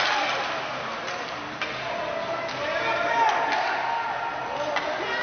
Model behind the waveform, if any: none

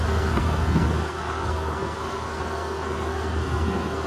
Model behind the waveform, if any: codec, SNAC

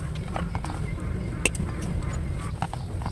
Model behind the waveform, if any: none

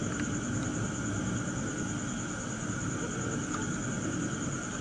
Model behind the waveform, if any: none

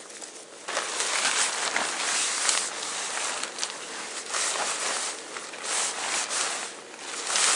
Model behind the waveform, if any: none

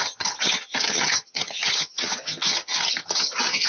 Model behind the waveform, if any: vocoder, HiFi-GAN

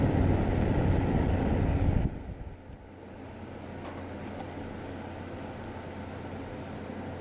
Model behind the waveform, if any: none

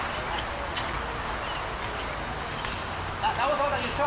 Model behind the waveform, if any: none